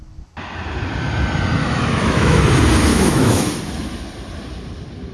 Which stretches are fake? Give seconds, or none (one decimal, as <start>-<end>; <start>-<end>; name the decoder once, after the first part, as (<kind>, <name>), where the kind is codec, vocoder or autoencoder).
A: 1.6-2.4 (autoencoder, DAC-VAE); 2.9-3.5